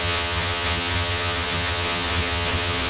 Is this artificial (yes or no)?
yes